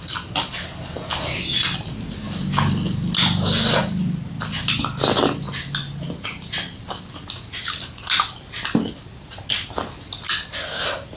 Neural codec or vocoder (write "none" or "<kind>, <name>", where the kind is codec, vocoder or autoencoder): none